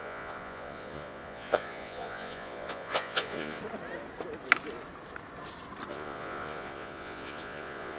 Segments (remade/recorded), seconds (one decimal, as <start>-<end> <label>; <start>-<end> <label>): 0.0-3.6 remade; 3.6-5.9 recorded; 5.9-8.0 remade